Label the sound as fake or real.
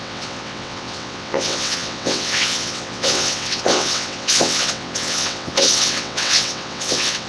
fake